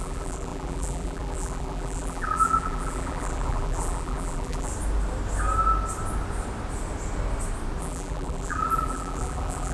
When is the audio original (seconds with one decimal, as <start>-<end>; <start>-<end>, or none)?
4.7-7.8